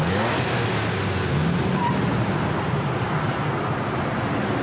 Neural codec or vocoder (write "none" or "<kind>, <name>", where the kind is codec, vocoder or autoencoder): none